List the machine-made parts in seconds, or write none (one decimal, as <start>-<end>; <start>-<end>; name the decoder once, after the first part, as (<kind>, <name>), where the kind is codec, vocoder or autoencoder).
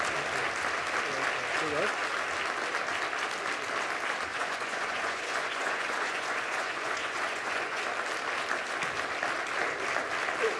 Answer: 4.3-7.8 (vocoder, Vocos)